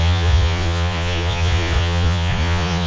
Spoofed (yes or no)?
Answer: yes